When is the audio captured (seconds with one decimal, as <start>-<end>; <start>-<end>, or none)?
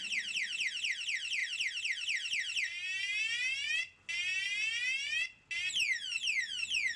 0.0-7.0